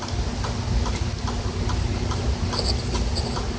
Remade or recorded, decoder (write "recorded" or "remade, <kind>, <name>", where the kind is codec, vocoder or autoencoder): recorded